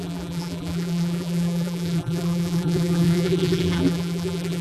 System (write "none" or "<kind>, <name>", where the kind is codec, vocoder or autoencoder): vocoder, BigVGAN v2